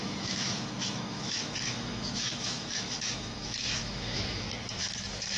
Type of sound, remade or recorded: remade